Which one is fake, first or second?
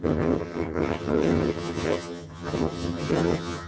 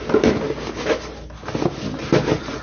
first